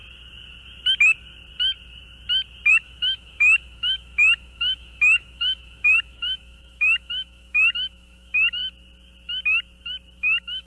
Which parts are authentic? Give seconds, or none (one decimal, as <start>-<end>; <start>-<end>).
0.0-2.7; 8.6-10.2